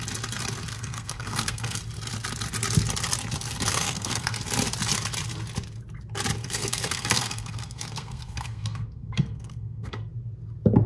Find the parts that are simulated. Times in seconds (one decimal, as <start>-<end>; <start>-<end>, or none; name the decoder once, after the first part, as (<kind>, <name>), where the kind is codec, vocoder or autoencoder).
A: 0.7-1.8 (codec, SNAC); 3.7-4.4; 6.4-10.1